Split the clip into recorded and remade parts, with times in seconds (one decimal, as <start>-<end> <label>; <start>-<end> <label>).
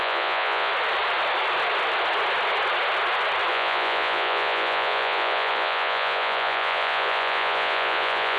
0.0-0.7 remade; 0.7-3.5 recorded; 3.5-8.4 remade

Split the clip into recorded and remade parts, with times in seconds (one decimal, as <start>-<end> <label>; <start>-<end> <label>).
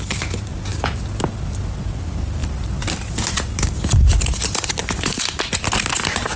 0.0-6.4 recorded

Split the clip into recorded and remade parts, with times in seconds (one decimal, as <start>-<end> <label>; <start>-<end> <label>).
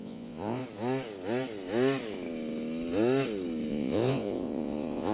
0.0-0.6 remade; 0.6-3.7 recorded; 3.7-5.1 remade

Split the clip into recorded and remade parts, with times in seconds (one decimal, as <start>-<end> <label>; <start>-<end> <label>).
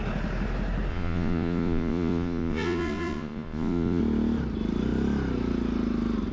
0.0-0.9 recorded; 0.9-4.0 remade; 4.0-6.3 recorded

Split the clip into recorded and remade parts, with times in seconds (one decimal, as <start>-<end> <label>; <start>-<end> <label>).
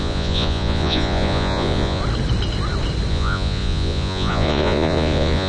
0.0-2.0 remade; 2.0-3.1 recorded; 3.1-5.5 remade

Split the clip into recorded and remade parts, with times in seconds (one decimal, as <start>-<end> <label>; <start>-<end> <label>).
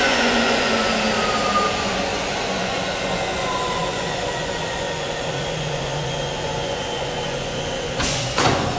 0.0-0.9 remade; 0.9-1.7 recorded; 1.7-8.8 remade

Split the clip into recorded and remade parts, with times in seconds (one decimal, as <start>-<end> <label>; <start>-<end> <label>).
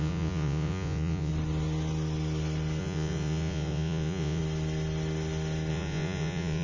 0.0-1.3 remade; 1.3-2.8 recorded; 2.8-4.4 remade; 4.4-5.7 recorded; 5.7-6.6 remade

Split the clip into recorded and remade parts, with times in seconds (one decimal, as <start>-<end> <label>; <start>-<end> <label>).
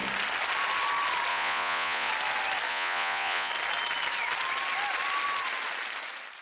0.0-1.3 recorded; 1.3-2.1 remade; 2.1-2.7 recorded; 2.7-3.5 remade; 3.5-6.4 recorded